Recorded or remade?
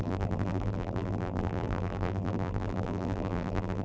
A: remade